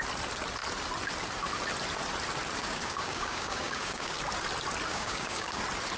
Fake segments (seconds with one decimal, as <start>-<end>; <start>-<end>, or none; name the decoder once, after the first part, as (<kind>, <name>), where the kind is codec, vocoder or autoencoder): 2.6-4.2 (codec, DAC); 4.9-5.6